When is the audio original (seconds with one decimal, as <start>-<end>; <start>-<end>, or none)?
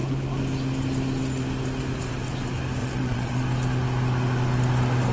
0.0-2.8; 3.4-5.1